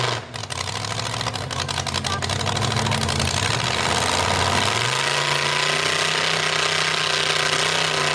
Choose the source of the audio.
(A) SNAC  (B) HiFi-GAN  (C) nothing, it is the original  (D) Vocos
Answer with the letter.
C